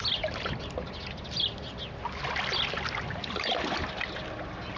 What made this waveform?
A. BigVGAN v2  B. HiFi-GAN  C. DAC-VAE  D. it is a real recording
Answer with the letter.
D